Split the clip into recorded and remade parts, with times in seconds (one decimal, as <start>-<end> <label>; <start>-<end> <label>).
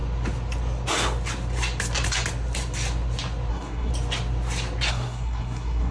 0.0-3.5 recorded; 3.5-3.9 remade; 3.9-4.9 recorded; 4.9-5.9 remade